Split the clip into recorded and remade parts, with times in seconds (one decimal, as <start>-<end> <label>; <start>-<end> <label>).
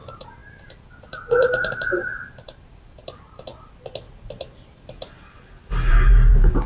0.0-3.5 remade; 3.5-5.9 recorded; 5.9-6.7 remade